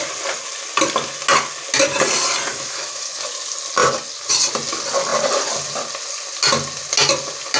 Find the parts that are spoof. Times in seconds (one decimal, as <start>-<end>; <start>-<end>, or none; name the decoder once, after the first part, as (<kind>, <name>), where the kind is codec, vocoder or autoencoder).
2.5-3.2 (autoencoder, DAC-VAE)